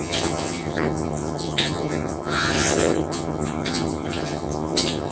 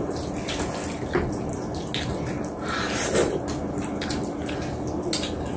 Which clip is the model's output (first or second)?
first